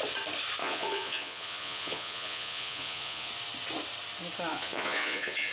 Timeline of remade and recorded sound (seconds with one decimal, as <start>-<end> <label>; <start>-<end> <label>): 0.0-0.6 recorded; 0.6-3.3 remade; 3.3-4.5 recorded; 4.5-5.5 remade